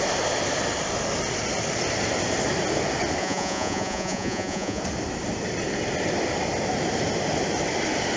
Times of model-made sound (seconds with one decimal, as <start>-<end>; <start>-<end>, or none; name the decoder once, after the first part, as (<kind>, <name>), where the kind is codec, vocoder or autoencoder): 3.2-4.8 (vocoder, Vocos)